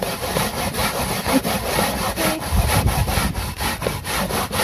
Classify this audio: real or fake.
real